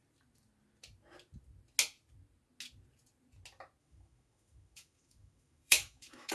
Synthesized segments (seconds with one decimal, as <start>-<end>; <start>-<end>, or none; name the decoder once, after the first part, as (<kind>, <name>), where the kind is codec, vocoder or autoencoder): 3.8-6.3 (autoencoder, DAC-VAE)